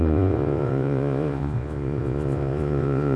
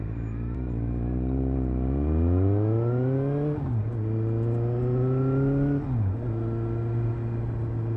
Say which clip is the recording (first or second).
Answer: second